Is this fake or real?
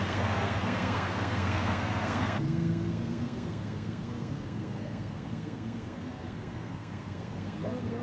fake